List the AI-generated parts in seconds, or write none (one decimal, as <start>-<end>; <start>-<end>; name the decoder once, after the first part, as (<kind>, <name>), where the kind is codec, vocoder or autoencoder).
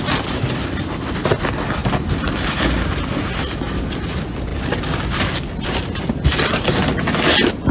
4.5-6.7 (vocoder, BigVGAN v2)